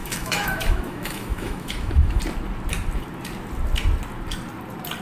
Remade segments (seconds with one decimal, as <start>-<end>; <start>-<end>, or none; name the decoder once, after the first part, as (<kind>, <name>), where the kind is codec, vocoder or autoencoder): 0.0-2.2 (autoencoder, DAC-VAE)